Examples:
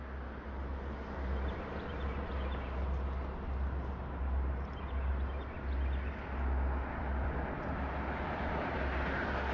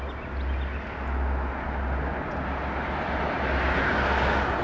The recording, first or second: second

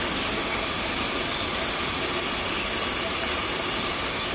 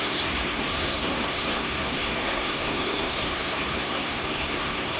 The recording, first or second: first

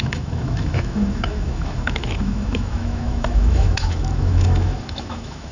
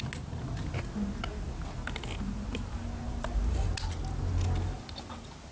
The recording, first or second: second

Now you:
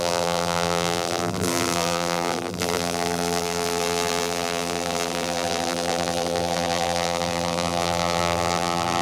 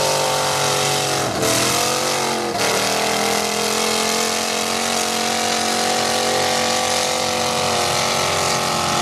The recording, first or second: second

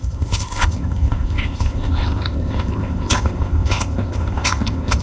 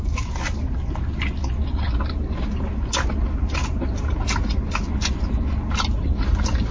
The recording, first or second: second